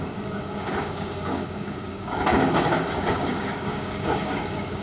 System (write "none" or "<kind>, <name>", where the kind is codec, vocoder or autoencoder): codec, DAC